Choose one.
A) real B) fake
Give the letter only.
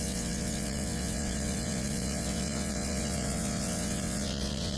B